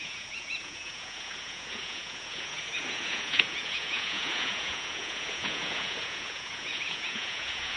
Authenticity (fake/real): fake